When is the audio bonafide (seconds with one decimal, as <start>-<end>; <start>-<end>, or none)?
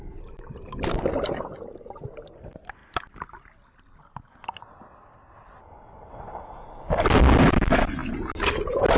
0.0-9.0